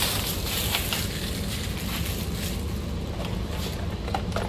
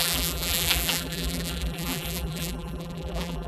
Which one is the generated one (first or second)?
second